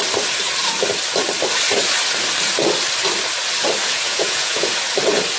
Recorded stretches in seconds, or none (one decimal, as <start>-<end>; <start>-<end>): 0.0-3.8; 4.7-5.4